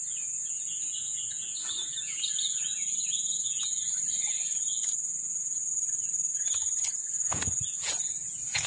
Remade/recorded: remade